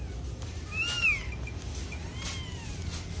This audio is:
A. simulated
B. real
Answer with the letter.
B